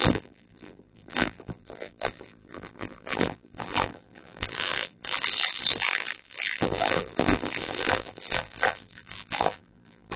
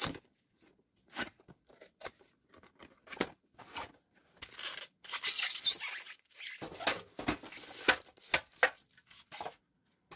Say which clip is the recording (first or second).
second